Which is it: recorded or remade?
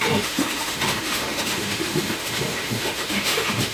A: remade